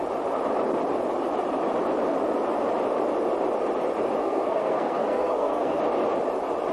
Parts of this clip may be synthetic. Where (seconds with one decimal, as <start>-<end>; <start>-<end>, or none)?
4.2-5.8